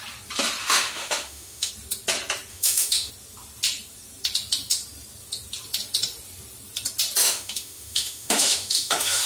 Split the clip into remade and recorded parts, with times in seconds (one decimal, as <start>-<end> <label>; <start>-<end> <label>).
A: 0.0-0.6 recorded; 0.6-1.7 remade; 1.7-2.5 recorded; 2.5-3.1 remade; 3.1-7.2 recorded; 7.2-9.3 remade